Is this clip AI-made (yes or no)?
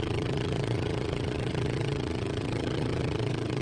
yes